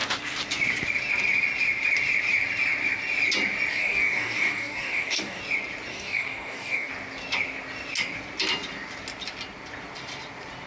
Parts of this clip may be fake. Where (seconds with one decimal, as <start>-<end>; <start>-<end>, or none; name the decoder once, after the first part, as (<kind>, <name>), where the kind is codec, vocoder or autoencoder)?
3.7-5.4 (codec, DAC); 5.9-6.9